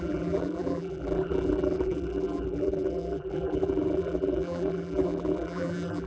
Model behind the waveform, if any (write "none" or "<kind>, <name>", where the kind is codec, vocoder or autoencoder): vocoder, BigVGAN v2